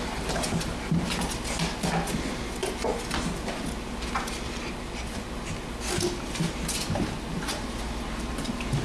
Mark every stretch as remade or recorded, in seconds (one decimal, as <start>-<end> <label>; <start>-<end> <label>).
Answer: 0.0-8.8 recorded